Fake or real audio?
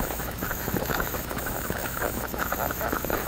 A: fake